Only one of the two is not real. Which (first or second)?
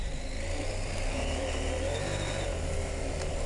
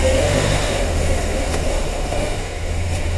second